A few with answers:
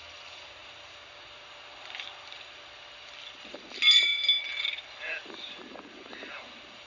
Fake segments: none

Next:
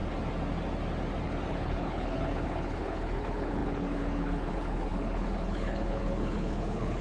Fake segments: 1.5-7.0 (codec, HILCodec)